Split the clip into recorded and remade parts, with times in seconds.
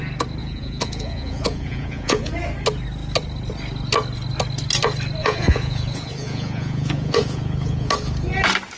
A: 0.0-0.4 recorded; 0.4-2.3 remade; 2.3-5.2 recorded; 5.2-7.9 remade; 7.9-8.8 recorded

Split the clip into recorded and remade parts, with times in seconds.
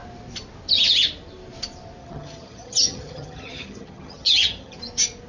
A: 0.0-2.0 recorded; 2.0-4.8 remade; 4.8-5.3 recorded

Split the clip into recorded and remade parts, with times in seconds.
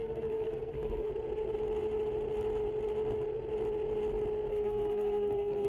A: 0.0-1.1 remade; 1.1-4.5 recorded; 4.5-5.7 remade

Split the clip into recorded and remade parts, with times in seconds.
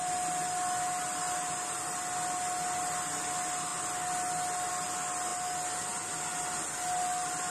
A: 0.0-7.5 recorded